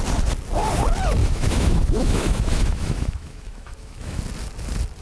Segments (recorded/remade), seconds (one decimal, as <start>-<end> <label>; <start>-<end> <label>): 0.0-1.2 recorded; 1.2-4.2 remade; 4.2-5.0 recorded